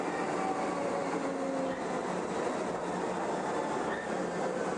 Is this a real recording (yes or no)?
yes